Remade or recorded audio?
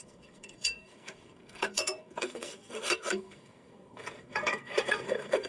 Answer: remade